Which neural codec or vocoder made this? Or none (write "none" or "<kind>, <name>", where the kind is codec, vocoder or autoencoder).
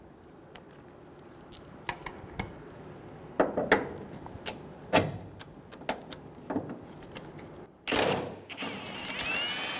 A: none